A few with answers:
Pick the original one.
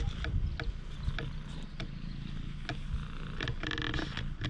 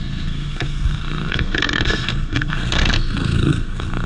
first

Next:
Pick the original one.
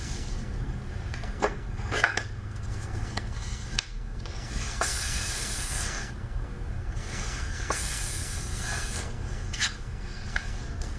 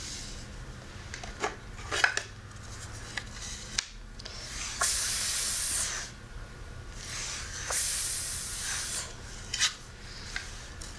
second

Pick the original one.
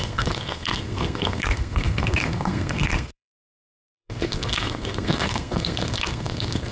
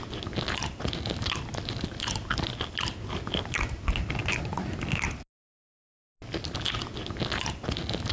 second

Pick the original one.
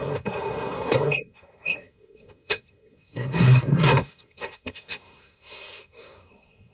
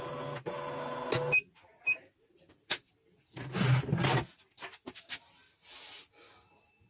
second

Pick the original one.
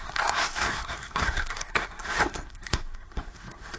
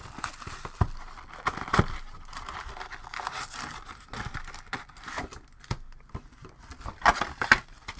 second